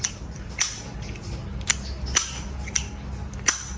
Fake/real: real